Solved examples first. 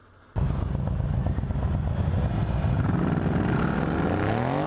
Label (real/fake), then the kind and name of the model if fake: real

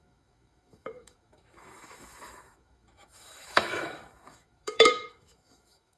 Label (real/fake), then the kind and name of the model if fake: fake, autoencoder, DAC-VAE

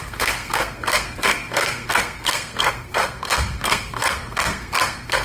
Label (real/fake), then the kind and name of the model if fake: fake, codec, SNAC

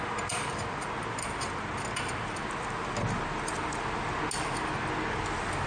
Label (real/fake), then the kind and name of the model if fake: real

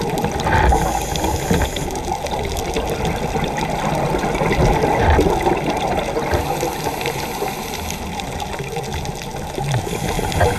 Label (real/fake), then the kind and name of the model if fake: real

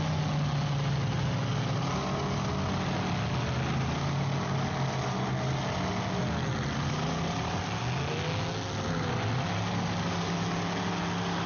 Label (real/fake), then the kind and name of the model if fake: real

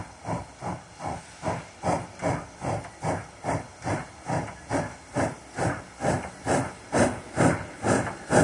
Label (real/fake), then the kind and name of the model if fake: real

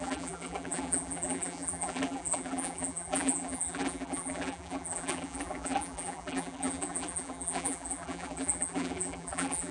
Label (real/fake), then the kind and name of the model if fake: fake, vocoder, BigVGAN v2